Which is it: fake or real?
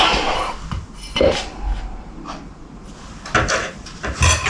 real